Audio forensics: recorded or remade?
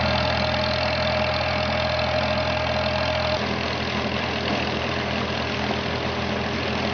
recorded